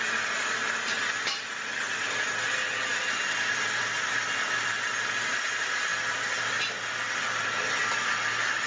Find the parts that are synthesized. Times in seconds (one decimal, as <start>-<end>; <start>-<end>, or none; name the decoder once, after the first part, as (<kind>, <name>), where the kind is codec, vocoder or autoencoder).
none